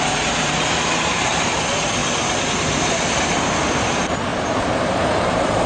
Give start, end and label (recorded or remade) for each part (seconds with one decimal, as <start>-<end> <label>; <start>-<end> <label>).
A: 0.0-2.0 remade; 2.0-2.5 recorded; 2.5-5.7 remade